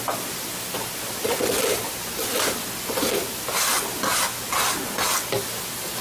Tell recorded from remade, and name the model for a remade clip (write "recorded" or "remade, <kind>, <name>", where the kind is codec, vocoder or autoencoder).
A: recorded